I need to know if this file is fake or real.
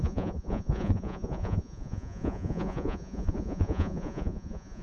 fake